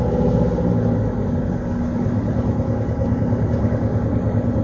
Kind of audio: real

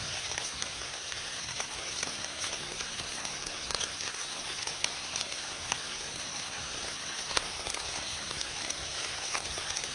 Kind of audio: fake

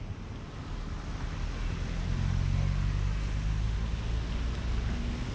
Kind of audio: real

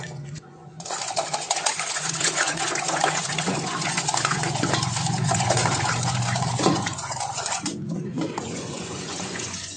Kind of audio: fake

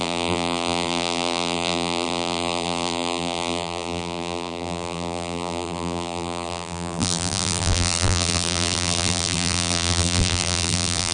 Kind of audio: fake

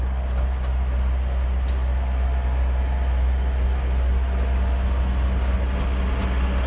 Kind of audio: real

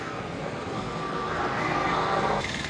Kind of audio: fake